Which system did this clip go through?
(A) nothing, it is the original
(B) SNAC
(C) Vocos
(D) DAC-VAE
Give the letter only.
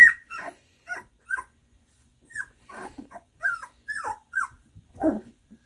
C